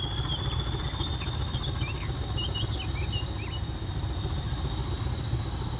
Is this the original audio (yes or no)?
yes